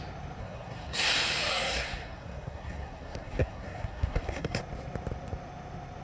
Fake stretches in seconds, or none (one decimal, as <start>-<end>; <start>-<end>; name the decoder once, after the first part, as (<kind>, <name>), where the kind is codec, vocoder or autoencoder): 0.4-1.1 (codec, SNAC); 1.5-4.6